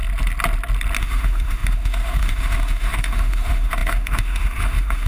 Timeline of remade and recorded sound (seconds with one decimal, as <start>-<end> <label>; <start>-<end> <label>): 0.0-1.0 recorded; 1.0-5.1 remade